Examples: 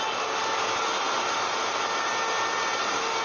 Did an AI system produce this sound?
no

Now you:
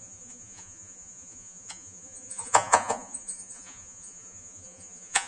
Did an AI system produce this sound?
yes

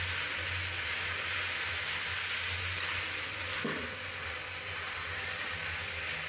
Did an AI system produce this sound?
no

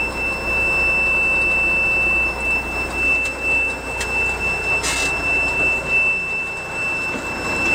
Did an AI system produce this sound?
no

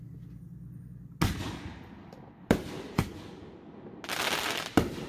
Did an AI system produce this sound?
no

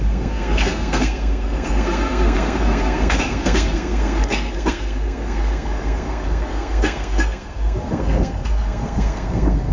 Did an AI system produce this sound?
yes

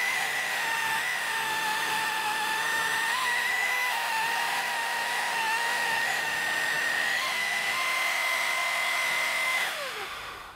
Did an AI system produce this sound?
yes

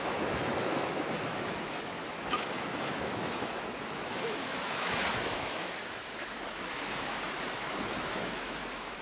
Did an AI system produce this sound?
yes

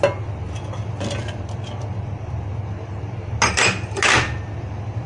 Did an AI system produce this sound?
no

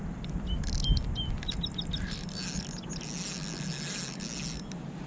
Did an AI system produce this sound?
no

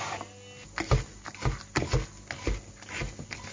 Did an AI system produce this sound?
no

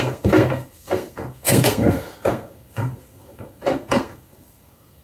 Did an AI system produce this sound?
yes